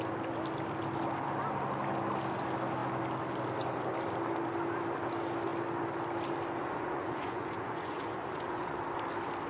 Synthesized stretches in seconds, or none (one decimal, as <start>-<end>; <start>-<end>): 6.6-8.8